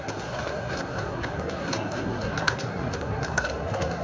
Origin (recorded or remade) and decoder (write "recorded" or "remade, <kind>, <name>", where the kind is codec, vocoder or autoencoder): remade, codec, SNAC